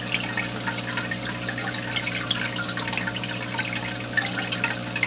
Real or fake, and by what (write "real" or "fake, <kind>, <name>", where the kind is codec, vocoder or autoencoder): real